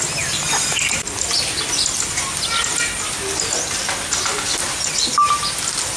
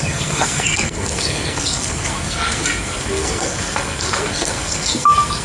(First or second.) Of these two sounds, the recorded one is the first